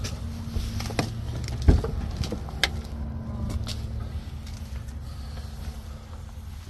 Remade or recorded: recorded